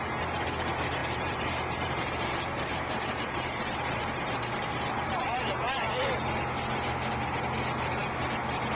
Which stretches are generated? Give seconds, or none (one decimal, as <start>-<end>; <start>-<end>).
1.0-5.4